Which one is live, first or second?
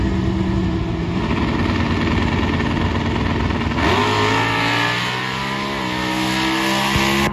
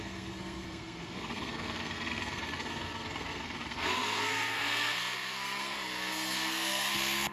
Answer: first